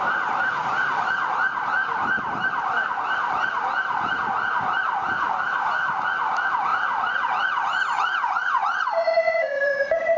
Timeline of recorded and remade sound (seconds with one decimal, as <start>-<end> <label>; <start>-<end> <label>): 0.0-6.7 recorded; 6.7-10.2 remade